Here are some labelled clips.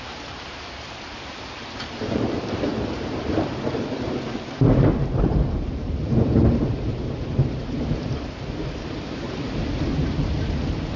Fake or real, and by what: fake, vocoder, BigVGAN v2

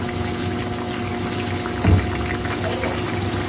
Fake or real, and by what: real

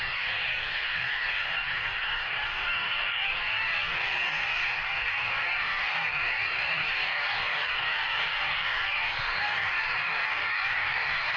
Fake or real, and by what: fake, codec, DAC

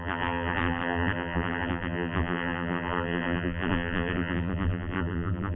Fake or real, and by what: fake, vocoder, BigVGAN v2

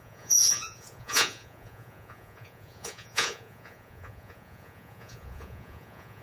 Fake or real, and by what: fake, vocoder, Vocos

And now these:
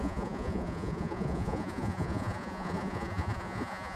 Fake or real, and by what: fake, vocoder, Vocos